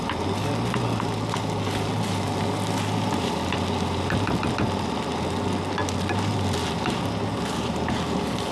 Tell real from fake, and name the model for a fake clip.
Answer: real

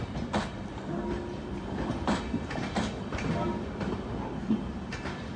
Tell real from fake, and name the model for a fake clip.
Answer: real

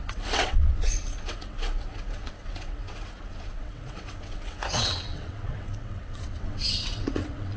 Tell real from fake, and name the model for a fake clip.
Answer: fake, vocoder, WaveNeXt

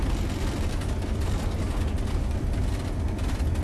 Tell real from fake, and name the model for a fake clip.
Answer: real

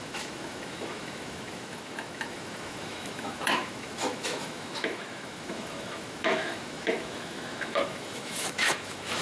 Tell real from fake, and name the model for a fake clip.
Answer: fake, autoencoder, DAC-VAE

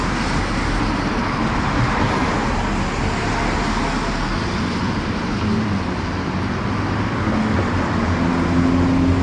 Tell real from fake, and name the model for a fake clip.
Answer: real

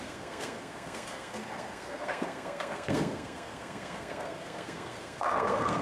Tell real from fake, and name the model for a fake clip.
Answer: fake, codec, SNAC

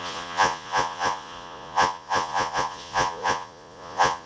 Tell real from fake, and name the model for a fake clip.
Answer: fake, vocoder, Vocos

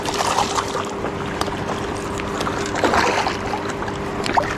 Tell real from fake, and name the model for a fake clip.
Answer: real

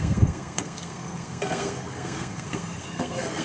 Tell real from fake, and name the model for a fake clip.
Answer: fake, codec, SNAC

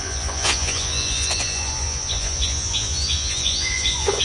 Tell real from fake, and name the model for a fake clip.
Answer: fake, vocoder, Vocos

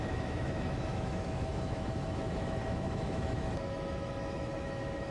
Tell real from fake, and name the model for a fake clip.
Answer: fake, autoencoder, DAC-VAE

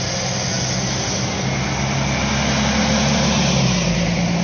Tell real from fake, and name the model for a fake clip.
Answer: real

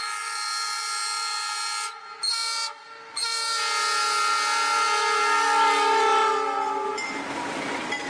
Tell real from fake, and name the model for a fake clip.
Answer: real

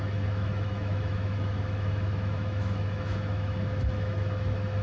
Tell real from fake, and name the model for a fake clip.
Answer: fake, autoencoder, DAC-VAE